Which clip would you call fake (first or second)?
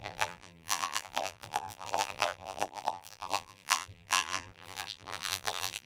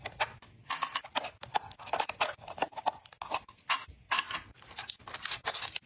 first